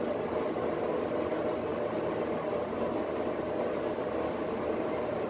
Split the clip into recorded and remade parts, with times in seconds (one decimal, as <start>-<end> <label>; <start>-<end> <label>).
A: 0.0-5.3 recorded